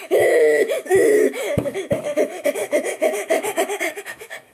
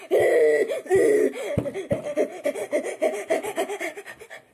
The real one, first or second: second